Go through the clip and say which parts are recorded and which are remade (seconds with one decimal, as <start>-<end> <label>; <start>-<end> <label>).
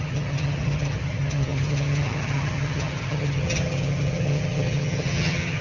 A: 0.0-5.6 remade